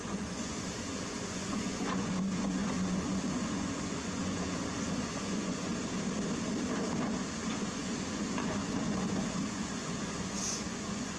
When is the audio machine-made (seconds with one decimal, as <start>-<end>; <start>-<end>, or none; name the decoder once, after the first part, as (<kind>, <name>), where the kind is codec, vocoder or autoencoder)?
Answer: 0.0-5.7 (vocoder, Vocos); 7.0-11.2